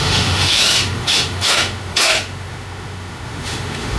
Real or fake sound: fake